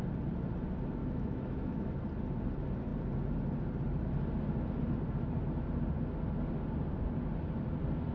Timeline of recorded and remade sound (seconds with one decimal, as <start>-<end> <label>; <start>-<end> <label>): 0.0-1.0 recorded; 1.0-1.9 remade; 1.9-8.1 recorded